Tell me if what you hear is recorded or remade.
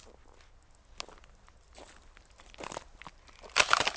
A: recorded